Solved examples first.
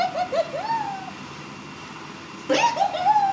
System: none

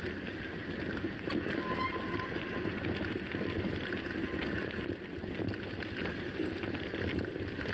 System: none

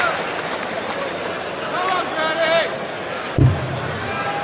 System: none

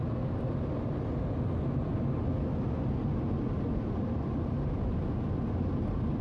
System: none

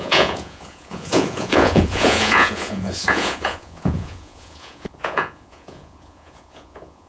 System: vocoder, Vocos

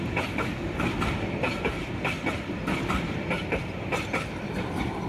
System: none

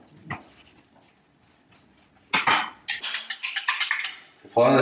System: none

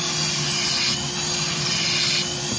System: none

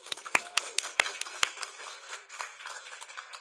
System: codec, SNAC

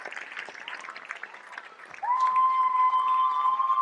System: none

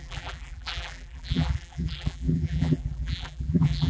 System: vocoder, BigVGAN v2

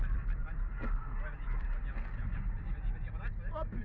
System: none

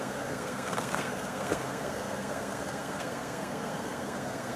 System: codec, SNAC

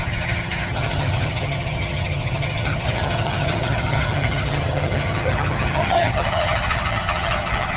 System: vocoder, HiFi-GAN